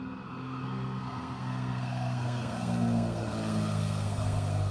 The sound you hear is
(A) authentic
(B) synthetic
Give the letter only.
B